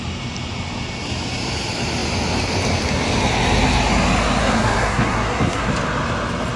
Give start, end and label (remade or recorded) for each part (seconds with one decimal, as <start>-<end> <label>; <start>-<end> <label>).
0.0-4.4 recorded; 4.4-5.7 remade; 5.7-6.6 recorded